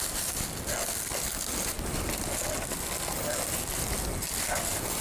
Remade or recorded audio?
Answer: recorded